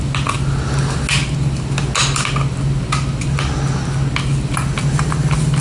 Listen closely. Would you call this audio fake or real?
real